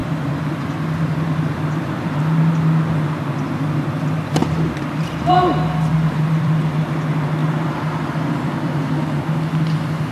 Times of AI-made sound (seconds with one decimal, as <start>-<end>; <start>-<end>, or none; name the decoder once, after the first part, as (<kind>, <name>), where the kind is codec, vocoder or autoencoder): 0.0-2.2 (vocoder, BigVGAN v2); 4.4-5.0; 5.9-6.8; 7.4-8.9